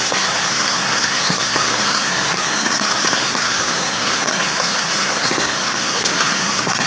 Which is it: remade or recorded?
remade